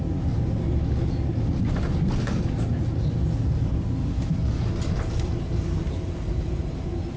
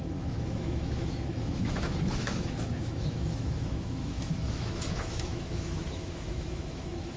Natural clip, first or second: first